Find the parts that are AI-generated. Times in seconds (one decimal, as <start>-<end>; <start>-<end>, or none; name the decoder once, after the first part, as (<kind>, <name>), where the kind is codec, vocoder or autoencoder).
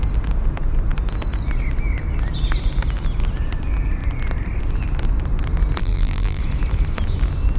5.8-6.4 (vocoder, BigVGAN v2)